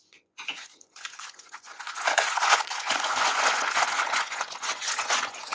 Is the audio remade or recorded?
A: remade